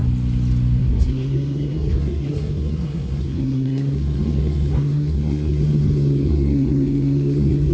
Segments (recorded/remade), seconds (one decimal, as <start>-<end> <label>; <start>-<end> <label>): 0.0-0.8 recorded; 0.8-7.7 remade